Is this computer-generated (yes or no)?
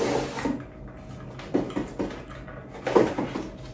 no